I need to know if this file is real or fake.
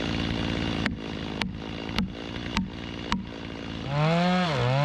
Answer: real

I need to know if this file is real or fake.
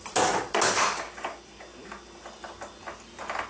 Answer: real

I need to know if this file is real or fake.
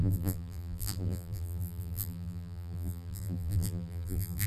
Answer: fake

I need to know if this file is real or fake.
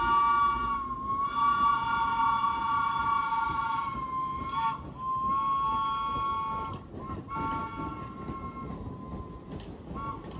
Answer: real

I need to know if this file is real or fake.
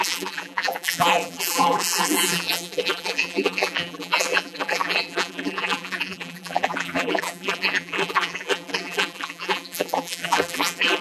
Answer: fake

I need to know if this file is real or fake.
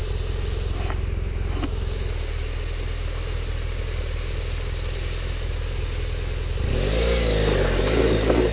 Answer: real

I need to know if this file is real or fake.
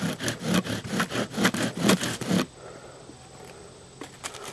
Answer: real